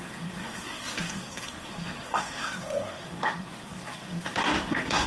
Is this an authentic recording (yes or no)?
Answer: no